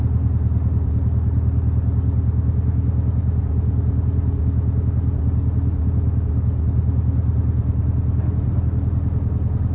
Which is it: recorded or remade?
recorded